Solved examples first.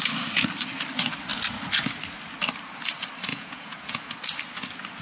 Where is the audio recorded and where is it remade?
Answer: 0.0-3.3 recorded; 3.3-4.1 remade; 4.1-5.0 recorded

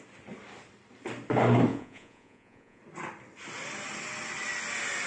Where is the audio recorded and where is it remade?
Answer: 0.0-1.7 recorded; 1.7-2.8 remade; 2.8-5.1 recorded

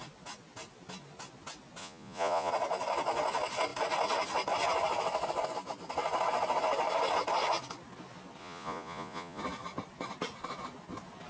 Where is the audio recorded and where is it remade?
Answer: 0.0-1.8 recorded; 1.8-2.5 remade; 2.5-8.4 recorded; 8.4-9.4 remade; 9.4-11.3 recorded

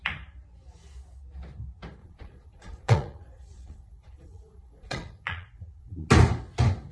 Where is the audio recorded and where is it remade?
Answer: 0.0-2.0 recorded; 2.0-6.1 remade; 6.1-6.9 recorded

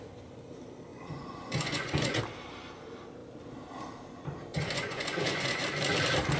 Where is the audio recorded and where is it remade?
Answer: 0.0-0.9 recorded; 0.9-2.2 remade; 2.2-4.5 recorded; 4.5-5.6 remade; 5.6-6.4 recorded

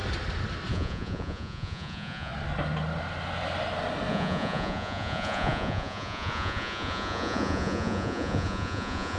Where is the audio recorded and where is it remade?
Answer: 0.0-0.7 recorded; 0.7-2.3 remade; 2.3-4.1 recorded; 4.1-9.2 remade

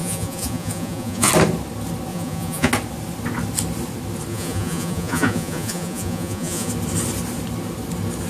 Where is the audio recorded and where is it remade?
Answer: 0.0-1.3 remade; 1.3-2.1 recorded; 2.1-2.7 remade; 2.7-4.3 recorded; 4.3-6.7 remade; 6.7-8.3 recorded

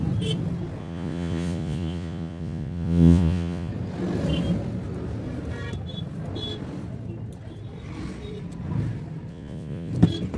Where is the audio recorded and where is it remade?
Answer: 0.0-0.8 recorded; 0.8-3.7 remade; 3.7-9.3 recorded; 9.3-9.9 remade; 9.9-10.4 recorded